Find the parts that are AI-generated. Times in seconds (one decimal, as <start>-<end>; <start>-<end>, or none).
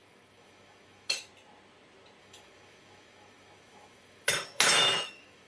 0.0-1.3; 2.2-5.5